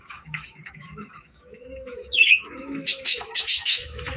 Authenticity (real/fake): fake